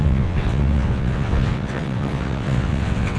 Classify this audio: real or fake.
fake